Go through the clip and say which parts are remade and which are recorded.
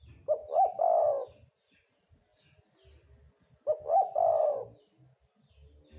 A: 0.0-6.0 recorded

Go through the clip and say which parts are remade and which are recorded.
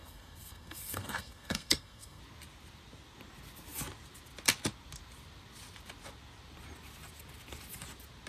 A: 0.0-2.2 remade; 2.2-8.3 recorded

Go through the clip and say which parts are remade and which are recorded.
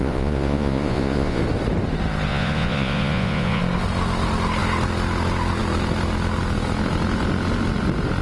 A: 0.0-1.4 remade; 1.4-2.3 recorded; 2.3-3.6 remade; 3.6-8.2 recorded